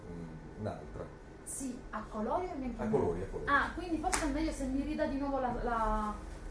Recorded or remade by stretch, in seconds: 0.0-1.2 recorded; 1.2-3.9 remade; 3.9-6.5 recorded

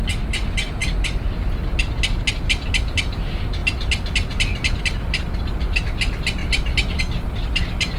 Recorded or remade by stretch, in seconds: 0.0-6.4 recorded; 6.4-7.0 remade; 7.0-8.0 recorded

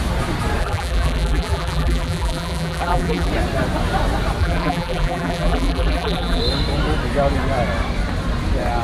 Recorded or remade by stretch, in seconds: 0.0-0.6 recorded; 0.6-3.3 remade; 3.3-4.4 recorded; 4.4-6.4 remade; 6.4-8.8 recorded

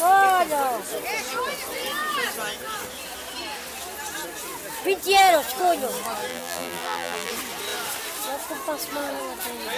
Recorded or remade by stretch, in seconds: 0.0-6.3 recorded; 6.3-7.3 remade; 7.3-9.8 recorded

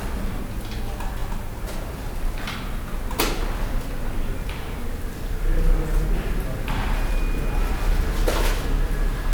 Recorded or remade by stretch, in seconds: 0.0-9.3 recorded

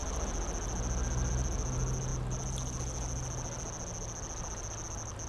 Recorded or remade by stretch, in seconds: 0.0-5.3 recorded

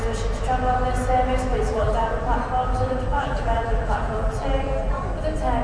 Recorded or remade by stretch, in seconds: 0.0-1.5 recorded; 1.5-2.1 remade; 2.1-3.1 recorded; 3.1-4.9 remade; 4.9-5.6 recorded

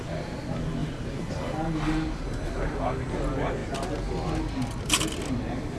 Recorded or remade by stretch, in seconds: 0.0-0.8 recorded; 0.8-1.4 remade; 1.4-5.8 recorded